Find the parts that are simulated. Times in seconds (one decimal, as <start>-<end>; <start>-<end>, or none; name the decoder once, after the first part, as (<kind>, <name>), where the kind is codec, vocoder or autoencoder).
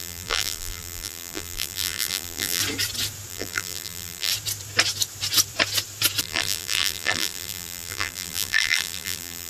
0.0-2.6 (vocoder, BigVGAN v2); 3.3-4.3; 6.2-9.5